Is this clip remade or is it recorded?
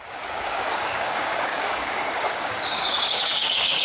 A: remade